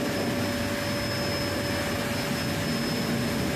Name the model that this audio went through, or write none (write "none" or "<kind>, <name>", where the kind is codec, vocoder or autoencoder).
none